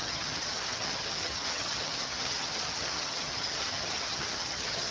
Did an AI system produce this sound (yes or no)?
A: yes